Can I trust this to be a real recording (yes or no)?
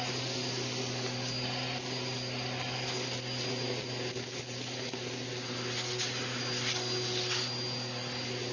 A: yes